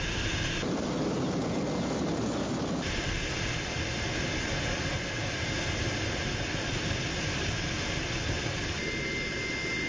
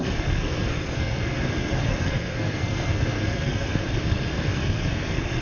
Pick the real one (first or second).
first